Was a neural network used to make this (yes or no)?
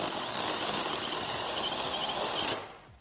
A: no